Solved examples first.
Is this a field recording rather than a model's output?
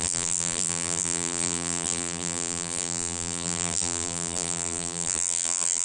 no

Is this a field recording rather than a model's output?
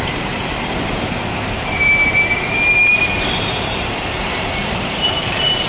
no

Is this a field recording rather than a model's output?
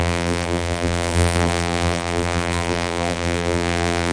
no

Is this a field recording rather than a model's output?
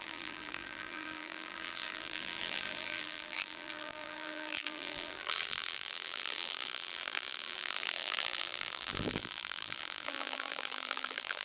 no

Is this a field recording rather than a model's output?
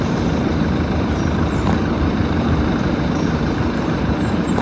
no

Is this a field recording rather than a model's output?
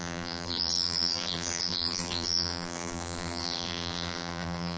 no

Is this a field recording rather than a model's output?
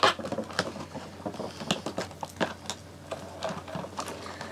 yes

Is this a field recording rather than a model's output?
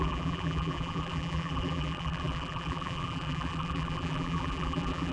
no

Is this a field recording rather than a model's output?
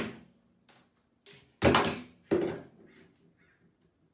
yes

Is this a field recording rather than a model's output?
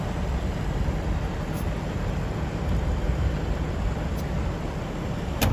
yes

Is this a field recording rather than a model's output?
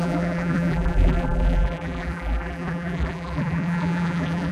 no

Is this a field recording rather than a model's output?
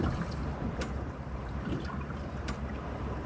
no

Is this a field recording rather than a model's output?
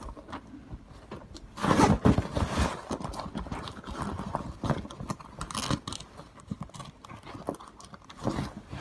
yes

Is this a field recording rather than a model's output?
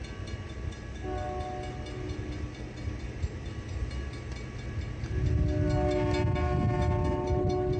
yes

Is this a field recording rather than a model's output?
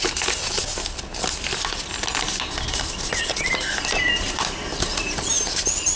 yes